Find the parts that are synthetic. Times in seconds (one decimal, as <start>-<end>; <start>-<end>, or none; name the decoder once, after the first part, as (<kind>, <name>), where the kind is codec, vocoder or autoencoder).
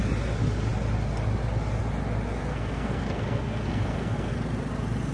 2.5-4.3 (codec, SNAC)